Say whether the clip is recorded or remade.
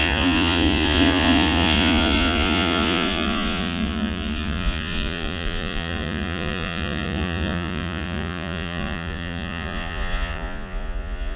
remade